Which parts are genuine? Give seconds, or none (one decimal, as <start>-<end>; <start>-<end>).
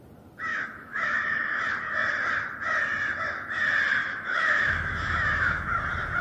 0.0-0.5; 1.6-4.0; 5.8-6.2